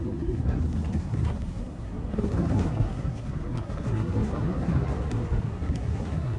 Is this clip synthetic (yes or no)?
yes